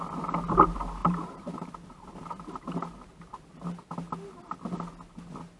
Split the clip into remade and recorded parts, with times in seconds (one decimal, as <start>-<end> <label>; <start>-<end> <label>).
0.0-1.0 recorded; 1.0-3.9 remade; 3.9-5.6 recorded